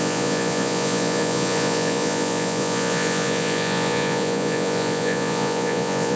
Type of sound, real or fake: fake